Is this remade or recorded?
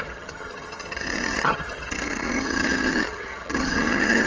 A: remade